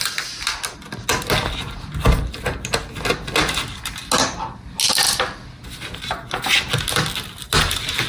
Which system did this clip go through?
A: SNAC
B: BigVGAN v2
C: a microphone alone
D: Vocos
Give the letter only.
C